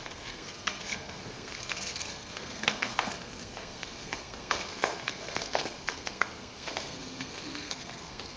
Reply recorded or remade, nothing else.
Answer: remade